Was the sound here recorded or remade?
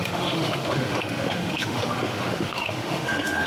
remade